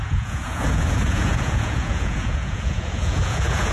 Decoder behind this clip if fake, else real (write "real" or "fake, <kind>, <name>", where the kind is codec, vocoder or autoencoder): fake, vocoder, Vocos